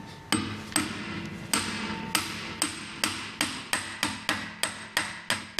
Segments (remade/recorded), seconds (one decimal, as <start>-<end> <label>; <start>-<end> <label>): 0.0-5.6 recorded